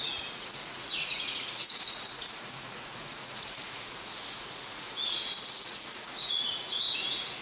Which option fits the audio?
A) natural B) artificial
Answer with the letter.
B